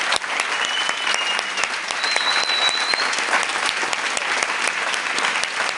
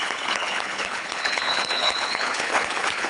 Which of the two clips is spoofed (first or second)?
second